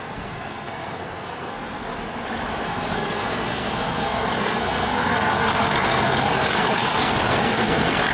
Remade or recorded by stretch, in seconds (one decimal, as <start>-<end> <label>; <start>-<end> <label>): 0.0-1.8 remade; 1.8-2.6 recorded; 2.6-8.1 remade